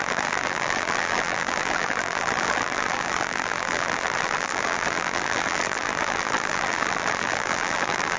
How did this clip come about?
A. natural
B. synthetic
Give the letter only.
B